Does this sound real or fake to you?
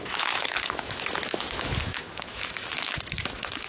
fake